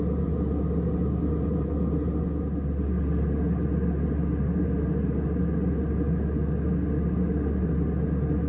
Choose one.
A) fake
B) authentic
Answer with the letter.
B